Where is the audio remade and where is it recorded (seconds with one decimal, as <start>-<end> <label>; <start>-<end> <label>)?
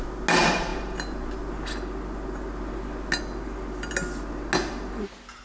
0.0-5.4 recorded